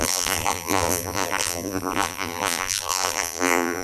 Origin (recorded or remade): remade